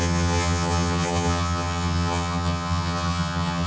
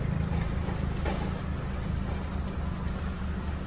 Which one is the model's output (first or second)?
first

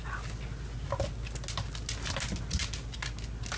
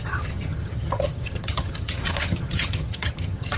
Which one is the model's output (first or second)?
second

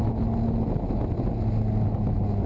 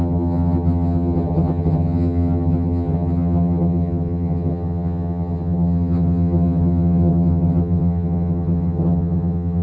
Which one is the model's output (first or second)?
second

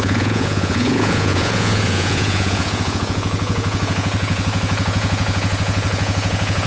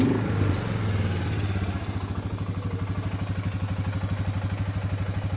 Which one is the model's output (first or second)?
first